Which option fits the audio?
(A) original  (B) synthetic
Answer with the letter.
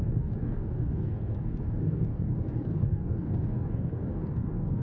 B